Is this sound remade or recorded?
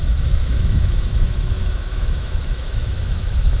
remade